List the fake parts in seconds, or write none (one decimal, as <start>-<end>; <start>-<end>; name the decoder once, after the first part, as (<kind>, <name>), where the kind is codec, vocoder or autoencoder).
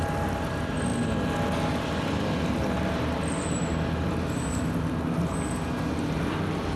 none